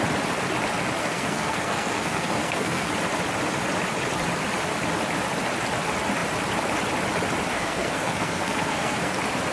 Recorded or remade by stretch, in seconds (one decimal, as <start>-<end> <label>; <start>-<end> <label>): 0.0-1.0 recorded; 1.0-2.9 remade; 2.9-7.5 recorded; 7.5-9.1 remade; 9.1-9.5 recorded